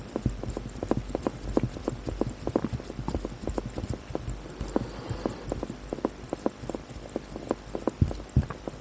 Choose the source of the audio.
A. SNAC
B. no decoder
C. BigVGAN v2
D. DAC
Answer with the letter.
B